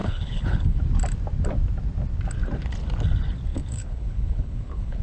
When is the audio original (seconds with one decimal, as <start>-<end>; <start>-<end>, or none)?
0.8-3.5